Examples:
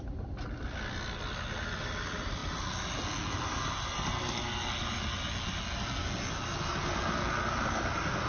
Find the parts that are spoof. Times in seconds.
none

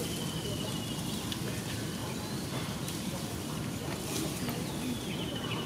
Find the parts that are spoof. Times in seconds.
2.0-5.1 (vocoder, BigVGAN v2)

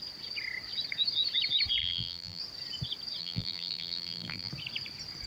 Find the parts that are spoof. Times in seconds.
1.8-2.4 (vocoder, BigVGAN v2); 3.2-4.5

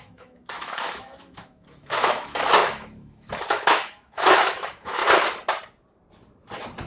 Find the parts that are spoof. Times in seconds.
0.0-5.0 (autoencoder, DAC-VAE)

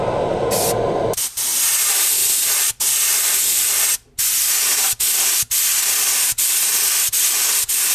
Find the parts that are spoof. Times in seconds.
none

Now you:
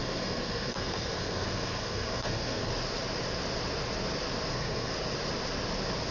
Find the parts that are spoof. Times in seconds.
0.0-2.7 (codec, SNAC); 4.5-4.9

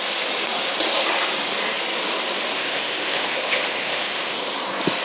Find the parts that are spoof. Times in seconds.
2.5-4.5 (codec, ZipCodec)

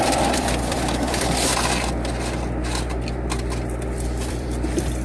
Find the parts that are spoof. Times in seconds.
0.0-1.5 (vocoder, BigVGAN v2); 4.3-5.0